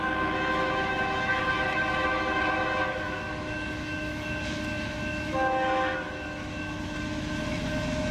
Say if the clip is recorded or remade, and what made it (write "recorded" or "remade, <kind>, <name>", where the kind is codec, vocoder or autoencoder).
remade, autoencoder, DAC-VAE